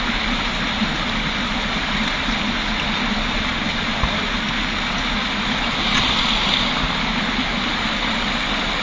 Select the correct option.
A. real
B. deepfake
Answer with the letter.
A